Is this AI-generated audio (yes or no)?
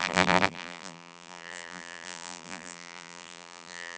yes